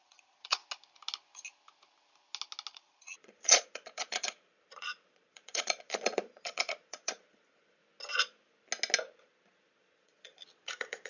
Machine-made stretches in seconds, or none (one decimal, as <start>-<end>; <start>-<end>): 0.0-0.6; 2.7-7.8; 9.2-11.1